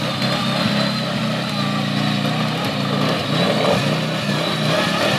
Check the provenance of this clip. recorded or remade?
recorded